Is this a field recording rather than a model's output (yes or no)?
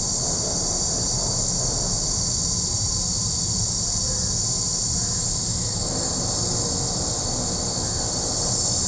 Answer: yes